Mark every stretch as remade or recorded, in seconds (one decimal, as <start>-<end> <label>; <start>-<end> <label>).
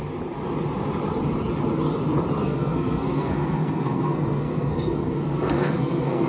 0.0-2.4 recorded; 2.4-6.3 remade